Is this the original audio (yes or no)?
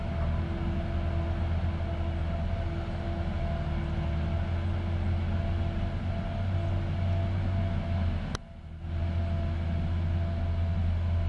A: yes